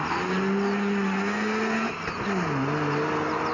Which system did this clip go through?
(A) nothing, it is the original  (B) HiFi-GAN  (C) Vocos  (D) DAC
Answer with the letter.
A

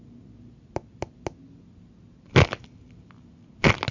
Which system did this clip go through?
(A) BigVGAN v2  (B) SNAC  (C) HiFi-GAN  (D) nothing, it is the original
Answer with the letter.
D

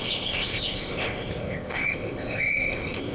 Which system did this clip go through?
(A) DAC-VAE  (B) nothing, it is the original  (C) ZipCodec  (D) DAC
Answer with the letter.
C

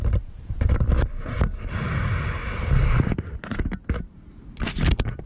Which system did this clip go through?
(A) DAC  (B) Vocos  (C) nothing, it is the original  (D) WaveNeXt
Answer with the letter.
C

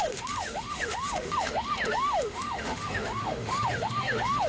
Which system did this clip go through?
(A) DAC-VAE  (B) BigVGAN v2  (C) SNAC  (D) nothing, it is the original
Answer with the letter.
A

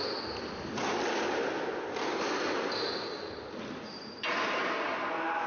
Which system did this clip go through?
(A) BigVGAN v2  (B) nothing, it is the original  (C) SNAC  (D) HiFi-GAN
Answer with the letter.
B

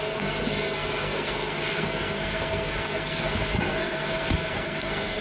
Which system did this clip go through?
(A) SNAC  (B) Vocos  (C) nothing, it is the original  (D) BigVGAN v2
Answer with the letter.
A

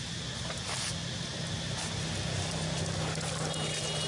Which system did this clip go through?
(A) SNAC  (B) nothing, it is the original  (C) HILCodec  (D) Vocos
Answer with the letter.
B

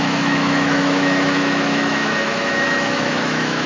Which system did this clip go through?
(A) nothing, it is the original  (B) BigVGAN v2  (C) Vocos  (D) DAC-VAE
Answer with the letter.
D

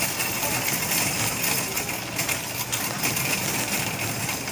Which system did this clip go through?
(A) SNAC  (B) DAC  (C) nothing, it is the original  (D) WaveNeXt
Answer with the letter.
C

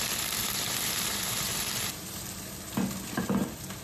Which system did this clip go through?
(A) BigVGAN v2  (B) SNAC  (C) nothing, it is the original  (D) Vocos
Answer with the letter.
A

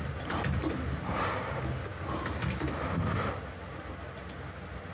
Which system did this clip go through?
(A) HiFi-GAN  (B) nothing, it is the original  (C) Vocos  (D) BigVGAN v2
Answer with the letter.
B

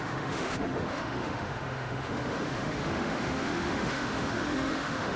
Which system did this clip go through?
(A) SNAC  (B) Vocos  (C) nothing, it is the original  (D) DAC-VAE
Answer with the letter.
D